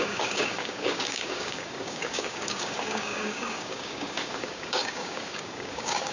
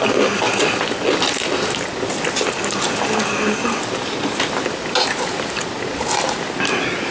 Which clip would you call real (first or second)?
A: second